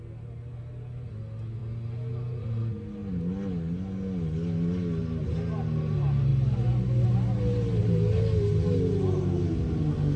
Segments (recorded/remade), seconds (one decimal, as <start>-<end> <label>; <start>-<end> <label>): 0.0-10.2 recorded